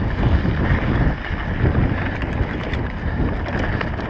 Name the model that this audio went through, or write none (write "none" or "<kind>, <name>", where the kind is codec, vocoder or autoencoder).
none